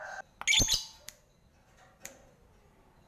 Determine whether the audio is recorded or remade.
recorded